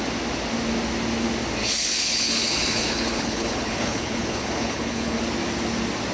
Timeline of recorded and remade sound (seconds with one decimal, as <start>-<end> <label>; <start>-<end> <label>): 0.0-1.6 recorded; 1.6-5.2 remade; 5.2-6.1 recorded